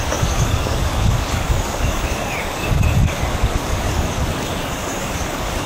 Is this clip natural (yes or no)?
no